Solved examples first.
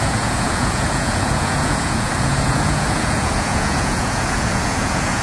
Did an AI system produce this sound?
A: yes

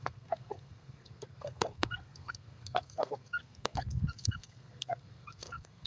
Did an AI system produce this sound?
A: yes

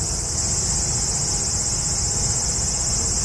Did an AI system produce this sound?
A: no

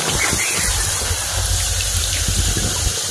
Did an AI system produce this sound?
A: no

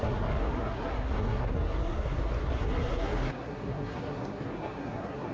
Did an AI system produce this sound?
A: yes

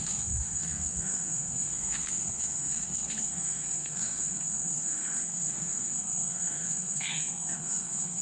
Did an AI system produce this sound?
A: yes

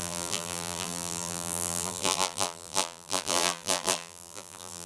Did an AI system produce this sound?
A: yes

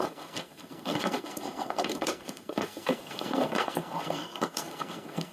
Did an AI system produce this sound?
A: yes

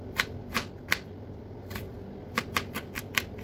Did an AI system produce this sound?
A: yes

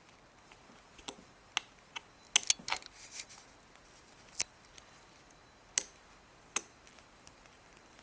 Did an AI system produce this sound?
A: no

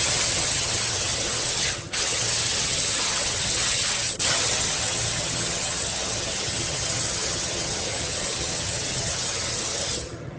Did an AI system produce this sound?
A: yes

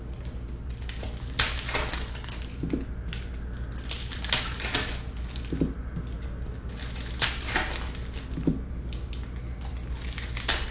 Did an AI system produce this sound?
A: no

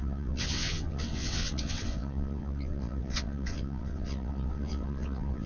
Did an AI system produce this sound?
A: yes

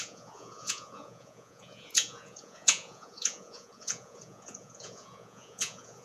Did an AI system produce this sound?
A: yes